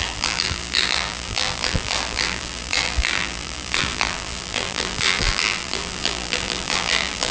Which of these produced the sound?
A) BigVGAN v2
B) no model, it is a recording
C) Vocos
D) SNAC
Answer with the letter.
A